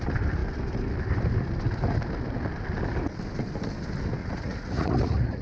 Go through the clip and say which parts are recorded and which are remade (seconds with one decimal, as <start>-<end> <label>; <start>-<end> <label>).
0.0-4.2 recorded; 4.2-5.4 remade